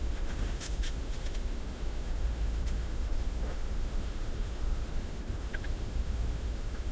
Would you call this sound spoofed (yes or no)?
yes